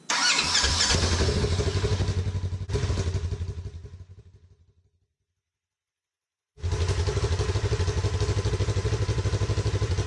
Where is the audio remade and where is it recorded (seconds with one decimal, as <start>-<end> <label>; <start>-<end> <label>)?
0.0-10.1 recorded